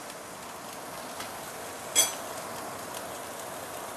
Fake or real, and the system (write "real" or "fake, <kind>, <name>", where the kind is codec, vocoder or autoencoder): real